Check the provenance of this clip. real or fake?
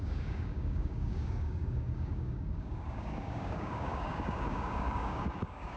fake